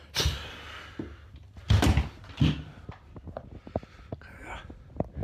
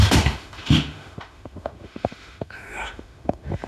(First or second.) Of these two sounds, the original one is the first